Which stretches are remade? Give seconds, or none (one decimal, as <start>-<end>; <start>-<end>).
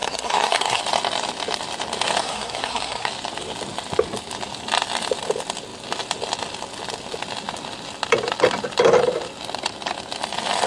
0.0-0.8; 2.2-3.1